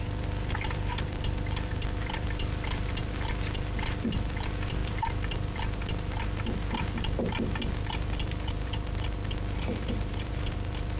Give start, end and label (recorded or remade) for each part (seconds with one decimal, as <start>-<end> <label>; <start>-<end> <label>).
0.0-11.0 remade